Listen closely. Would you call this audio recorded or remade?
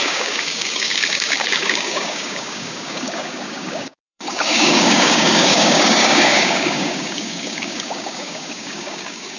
remade